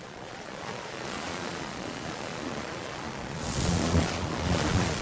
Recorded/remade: remade